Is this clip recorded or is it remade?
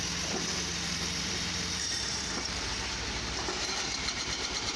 remade